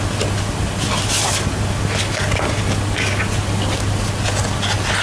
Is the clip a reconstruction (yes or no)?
no